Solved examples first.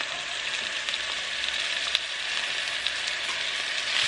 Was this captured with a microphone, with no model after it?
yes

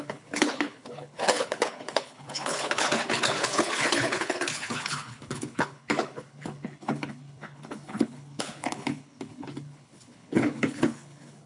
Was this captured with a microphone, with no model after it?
no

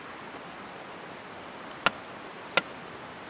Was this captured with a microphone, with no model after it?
yes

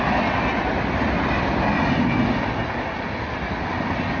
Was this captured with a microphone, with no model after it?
yes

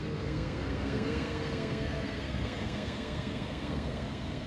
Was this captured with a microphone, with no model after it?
no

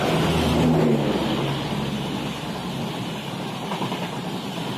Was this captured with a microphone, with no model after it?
yes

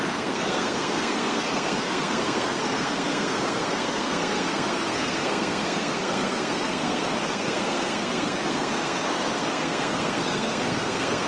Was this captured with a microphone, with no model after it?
no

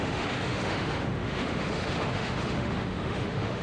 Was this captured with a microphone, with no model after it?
no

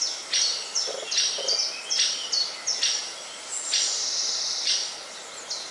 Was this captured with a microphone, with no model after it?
yes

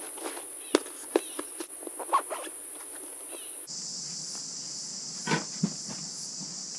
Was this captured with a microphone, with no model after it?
yes